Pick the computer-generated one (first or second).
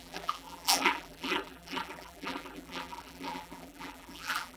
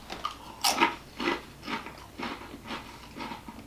first